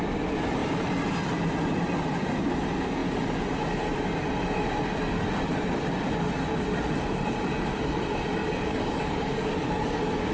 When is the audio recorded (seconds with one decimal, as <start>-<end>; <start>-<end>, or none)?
0.0-8.4